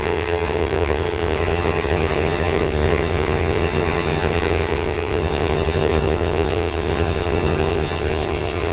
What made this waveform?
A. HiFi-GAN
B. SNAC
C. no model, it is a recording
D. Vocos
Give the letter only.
A